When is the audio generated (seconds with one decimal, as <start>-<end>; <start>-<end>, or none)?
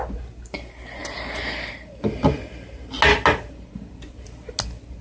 none